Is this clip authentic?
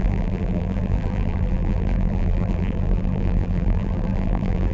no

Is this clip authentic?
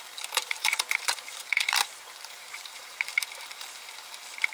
no